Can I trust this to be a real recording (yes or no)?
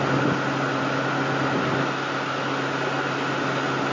yes